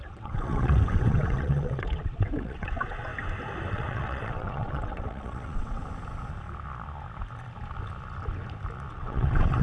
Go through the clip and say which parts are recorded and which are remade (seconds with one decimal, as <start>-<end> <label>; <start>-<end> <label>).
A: 0.0-3.1 remade; 3.1-3.7 recorded; 3.7-5.8 remade; 5.8-8.9 recorded; 8.9-9.6 remade